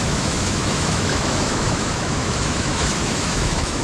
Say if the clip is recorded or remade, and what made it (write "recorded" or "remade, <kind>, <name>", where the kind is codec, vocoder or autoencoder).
remade, autoencoder, DAC-VAE